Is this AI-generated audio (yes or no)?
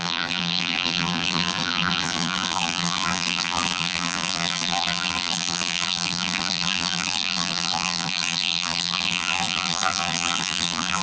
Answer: yes